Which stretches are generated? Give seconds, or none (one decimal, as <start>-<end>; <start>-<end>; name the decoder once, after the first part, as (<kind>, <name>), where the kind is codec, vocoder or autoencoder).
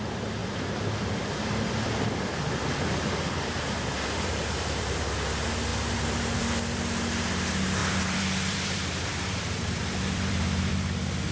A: 0.4-1.4 (vocoder, BigVGAN v2); 5.7-6.4; 7.8-10.7